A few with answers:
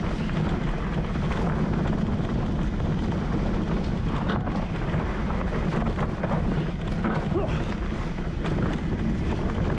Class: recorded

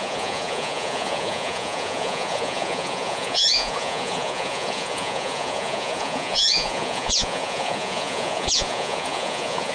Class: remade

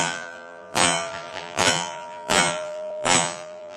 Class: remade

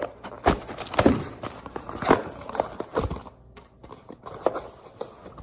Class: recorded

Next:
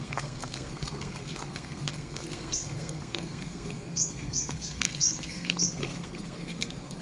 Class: remade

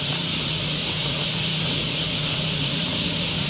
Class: remade